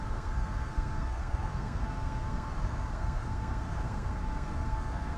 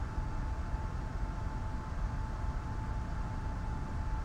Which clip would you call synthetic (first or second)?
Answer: first